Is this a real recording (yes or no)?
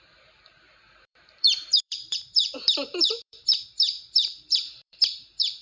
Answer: no